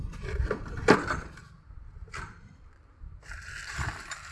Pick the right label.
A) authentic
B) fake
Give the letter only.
B